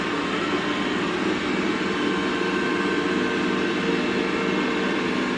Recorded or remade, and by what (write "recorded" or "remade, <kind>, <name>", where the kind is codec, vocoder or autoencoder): recorded